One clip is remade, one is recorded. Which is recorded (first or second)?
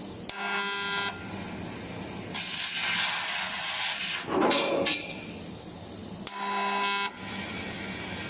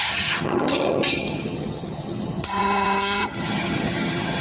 first